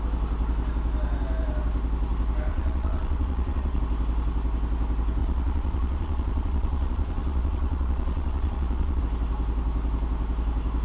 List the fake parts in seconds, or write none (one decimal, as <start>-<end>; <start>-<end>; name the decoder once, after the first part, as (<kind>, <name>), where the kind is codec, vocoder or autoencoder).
2.5-3.8 (vocoder, Vocos); 5.2-9.0